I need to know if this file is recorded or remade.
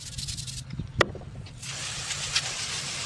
recorded